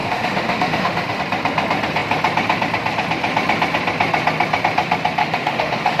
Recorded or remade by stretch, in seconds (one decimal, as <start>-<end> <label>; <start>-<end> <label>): 0.0-1.2 remade; 1.2-5.2 recorded; 5.2-6.0 remade